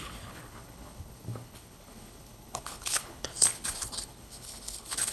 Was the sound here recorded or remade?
remade